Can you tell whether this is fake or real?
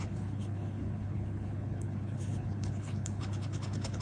fake